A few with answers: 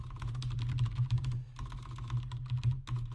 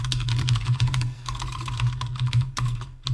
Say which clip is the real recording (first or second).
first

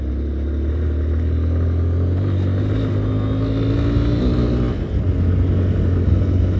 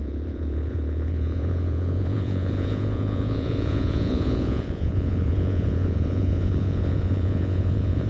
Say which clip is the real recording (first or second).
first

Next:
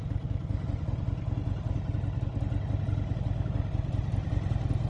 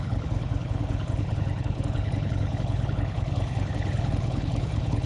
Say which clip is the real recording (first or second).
first